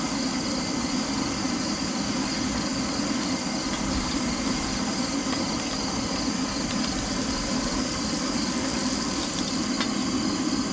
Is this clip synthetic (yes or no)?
no